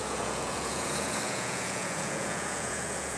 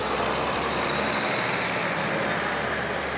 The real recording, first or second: second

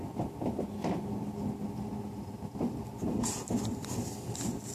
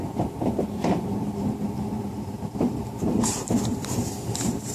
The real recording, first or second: first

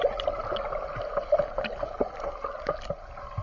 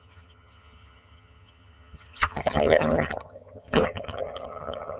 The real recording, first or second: first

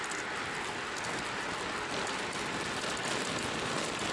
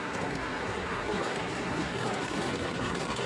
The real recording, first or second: first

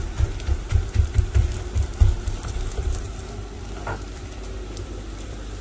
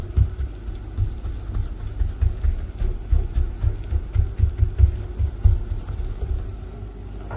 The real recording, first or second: second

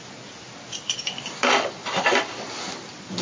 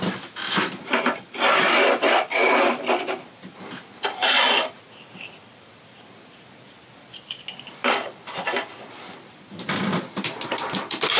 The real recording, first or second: first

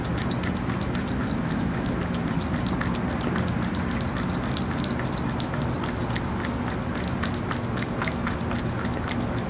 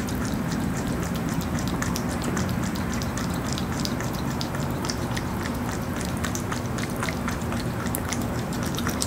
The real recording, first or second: first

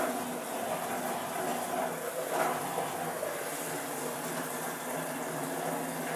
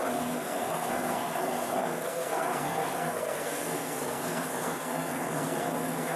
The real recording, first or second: first